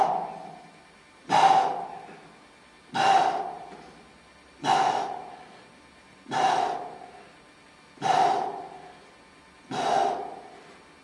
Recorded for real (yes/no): yes